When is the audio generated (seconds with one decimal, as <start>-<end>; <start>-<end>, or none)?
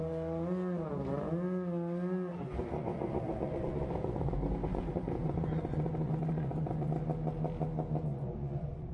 2.3-6.9; 8.1-8.9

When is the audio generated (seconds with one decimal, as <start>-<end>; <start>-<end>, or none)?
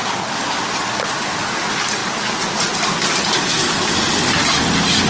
none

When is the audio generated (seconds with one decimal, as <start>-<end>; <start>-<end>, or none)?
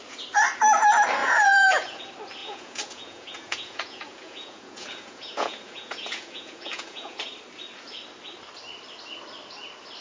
1.2-2.0; 2.4-7.2